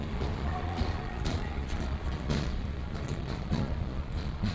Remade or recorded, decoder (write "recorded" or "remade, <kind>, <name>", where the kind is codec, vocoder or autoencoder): remade, vocoder, Vocos